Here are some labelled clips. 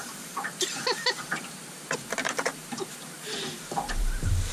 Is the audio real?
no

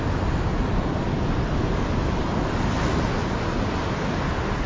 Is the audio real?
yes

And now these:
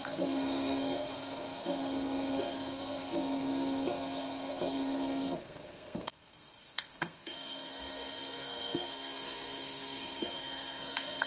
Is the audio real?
no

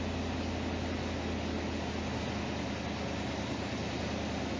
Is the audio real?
yes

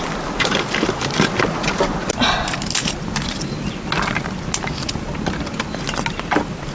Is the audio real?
yes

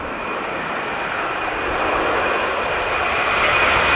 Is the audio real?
yes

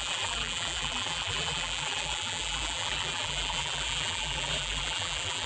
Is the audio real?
no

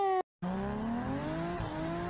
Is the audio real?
yes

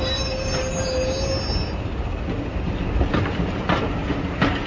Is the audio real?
yes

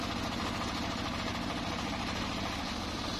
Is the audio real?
yes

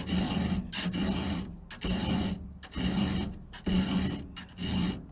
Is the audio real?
yes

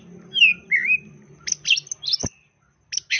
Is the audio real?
yes